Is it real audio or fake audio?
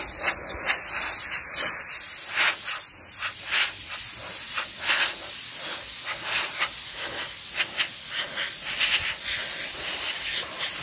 real